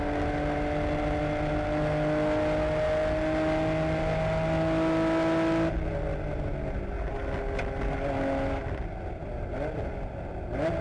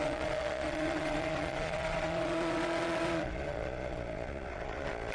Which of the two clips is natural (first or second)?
first